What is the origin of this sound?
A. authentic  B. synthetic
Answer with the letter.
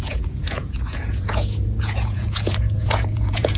B